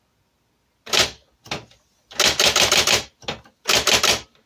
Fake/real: real